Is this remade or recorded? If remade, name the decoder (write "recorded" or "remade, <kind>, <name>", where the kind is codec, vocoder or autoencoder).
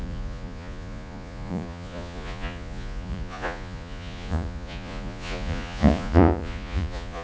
remade, vocoder, Vocos